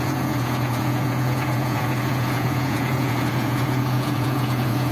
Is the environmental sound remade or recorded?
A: remade